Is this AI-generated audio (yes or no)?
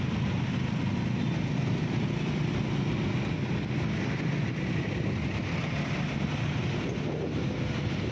no